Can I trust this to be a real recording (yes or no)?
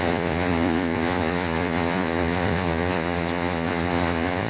no